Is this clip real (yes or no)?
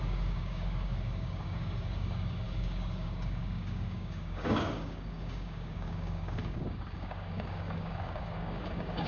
no